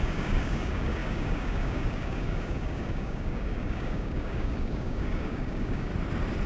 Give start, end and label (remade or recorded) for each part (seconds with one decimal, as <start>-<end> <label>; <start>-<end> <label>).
0.0-5.9 remade; 5.9-6.5 recorded